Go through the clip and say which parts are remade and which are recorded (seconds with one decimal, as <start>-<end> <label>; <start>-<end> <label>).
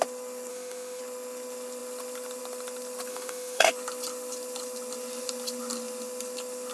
0.0-0.5 recorded; 0.5-1.0 remade; 1.0-3.1 recorded; 3.1-3.7 remade; 3.7-6.7 recorded